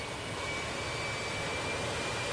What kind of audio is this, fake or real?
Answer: real